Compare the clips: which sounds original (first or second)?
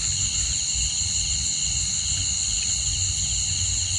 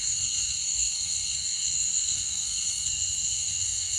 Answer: first